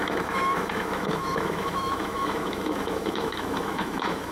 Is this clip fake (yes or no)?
yes